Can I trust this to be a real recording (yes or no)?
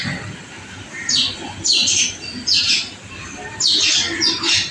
yes